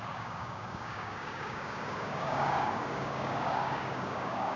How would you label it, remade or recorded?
remade